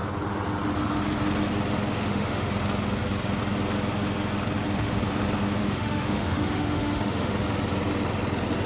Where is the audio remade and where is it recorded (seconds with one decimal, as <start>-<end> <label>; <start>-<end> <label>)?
0.0-1.9 recorded; 1.9-2.5 remade; 2.5-5.6 recorded; 5.6-7.3 remade; 7.3-8.7 recorded